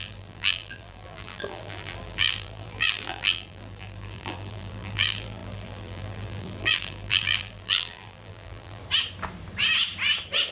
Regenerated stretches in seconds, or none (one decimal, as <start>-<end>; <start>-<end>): 0.0-8.8